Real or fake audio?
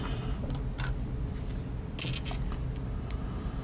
real